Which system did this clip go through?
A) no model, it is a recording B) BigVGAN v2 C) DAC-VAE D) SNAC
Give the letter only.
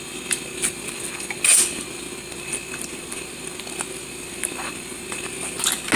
A